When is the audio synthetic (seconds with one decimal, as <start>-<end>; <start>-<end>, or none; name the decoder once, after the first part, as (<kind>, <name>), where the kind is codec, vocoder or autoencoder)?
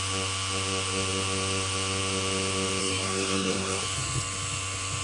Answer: 2.8-3.8 (codec, SNAC)